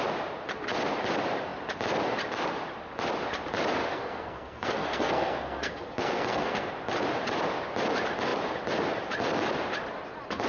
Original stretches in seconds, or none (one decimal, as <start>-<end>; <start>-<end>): 0.0-3.8; 6.7-10.5